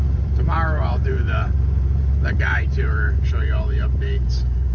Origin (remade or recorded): remade